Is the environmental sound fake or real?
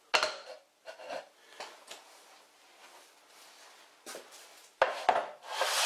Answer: real